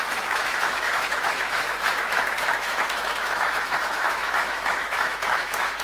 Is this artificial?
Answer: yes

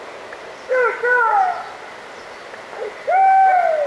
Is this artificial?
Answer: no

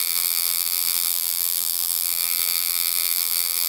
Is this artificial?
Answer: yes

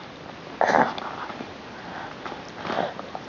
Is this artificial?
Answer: no